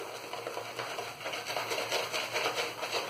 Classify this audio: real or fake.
real